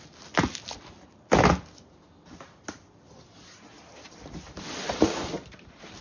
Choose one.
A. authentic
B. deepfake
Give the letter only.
A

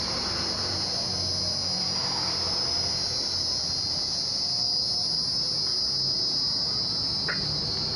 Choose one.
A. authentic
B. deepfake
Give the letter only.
A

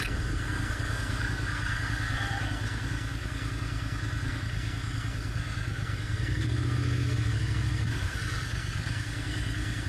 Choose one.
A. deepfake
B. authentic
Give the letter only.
A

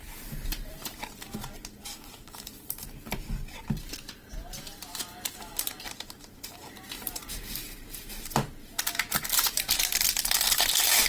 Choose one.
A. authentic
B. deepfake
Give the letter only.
B